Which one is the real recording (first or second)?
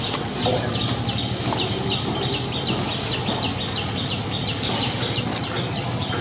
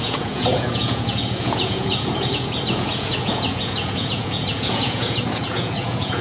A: first